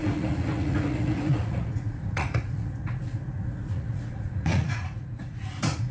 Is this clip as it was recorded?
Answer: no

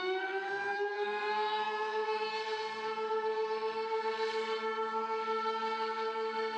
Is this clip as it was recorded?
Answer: no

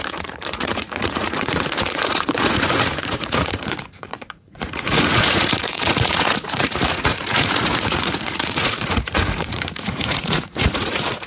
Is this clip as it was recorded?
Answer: no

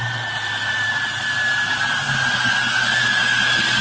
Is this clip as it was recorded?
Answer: yes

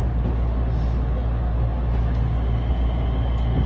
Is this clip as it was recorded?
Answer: yes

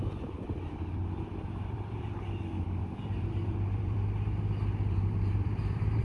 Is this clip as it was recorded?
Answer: no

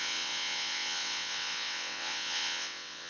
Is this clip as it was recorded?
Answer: no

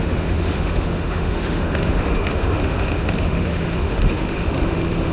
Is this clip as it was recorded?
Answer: no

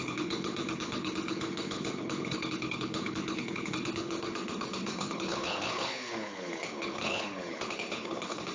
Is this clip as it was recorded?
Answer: no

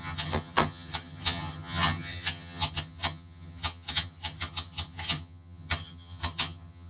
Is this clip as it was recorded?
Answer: no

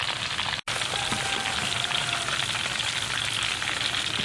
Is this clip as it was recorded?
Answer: yes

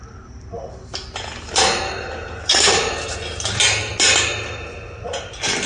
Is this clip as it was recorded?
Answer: yes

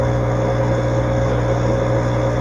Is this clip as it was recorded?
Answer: yes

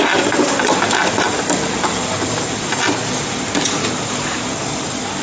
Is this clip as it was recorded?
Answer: yes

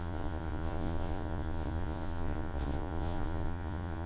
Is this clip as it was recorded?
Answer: no